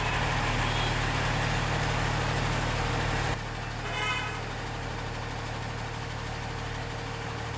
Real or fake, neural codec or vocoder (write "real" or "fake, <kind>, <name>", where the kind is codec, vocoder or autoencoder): real